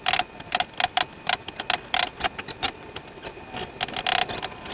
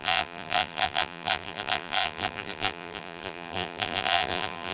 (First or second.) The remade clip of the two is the second